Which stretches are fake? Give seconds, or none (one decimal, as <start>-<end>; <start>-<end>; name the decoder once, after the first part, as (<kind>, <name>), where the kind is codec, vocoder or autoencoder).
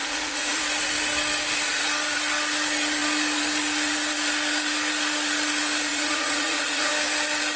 0.0-0.6 (vocoder, Vocos); 5.9-6.9